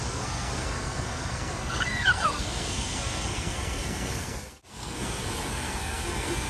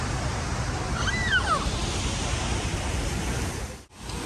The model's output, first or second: first